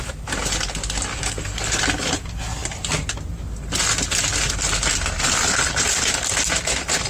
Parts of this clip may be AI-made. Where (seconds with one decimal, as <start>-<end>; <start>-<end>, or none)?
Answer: 1.1-1.8